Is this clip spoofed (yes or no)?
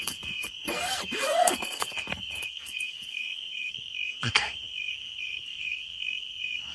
yes